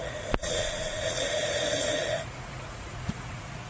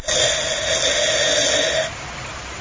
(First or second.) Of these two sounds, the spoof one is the first